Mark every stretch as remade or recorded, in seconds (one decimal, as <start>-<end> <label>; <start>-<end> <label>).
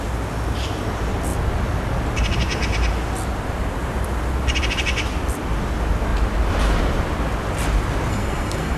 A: 0.0-8.1 recorded; 8.1-8.8 remade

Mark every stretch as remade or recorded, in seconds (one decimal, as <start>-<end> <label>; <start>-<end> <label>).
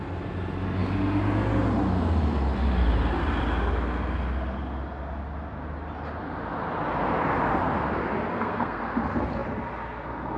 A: 0.0-8.3 recorded; 8.3-8.8 remade; 8.8-10.4 recorded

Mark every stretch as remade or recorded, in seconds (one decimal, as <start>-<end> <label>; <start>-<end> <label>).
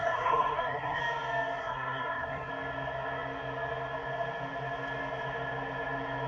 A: 0.0-1.0 remade; 1.0-1.6 recorded; 1.6-2.5 remade; 2.5-6.3 recorded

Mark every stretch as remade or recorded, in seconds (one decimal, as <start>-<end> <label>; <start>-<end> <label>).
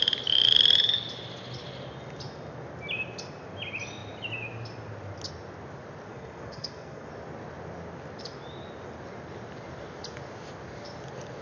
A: 0.0-6.1 recorded; 6.1-7.1 remade; 7.1-11.4 recorded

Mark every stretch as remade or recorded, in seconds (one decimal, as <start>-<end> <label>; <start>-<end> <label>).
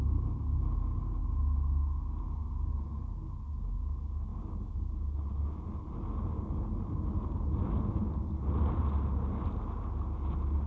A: 0.0-10.7 recorded